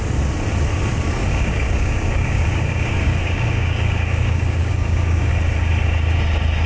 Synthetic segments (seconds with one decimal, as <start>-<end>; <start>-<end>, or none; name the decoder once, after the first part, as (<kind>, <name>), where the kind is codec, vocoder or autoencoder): 1.3-5.3 (codec, DAC)